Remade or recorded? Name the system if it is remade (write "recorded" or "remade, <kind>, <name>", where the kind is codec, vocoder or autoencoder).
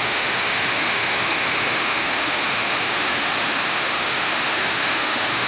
remade, autoencoder, DAC-VAE